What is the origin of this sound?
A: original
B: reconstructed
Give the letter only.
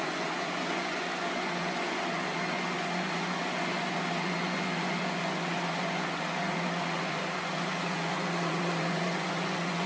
B